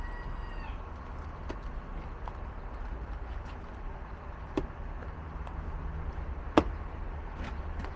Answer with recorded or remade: recorded